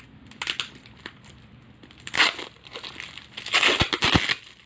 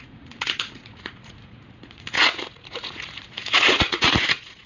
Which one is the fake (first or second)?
second